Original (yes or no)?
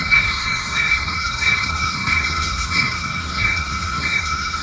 no